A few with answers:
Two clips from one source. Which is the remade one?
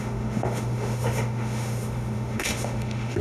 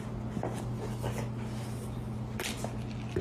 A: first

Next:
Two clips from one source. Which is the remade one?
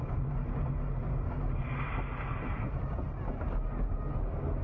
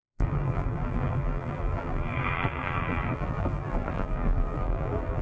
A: second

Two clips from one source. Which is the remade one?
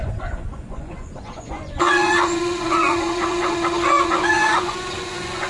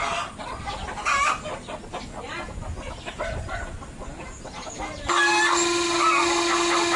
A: first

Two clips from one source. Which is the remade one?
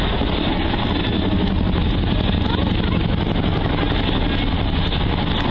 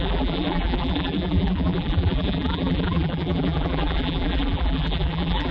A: second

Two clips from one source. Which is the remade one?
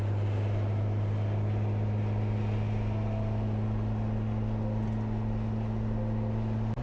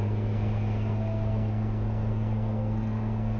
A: second